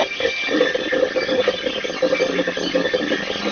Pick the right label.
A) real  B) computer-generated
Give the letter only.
A